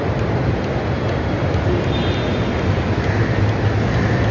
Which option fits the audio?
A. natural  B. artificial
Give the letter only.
A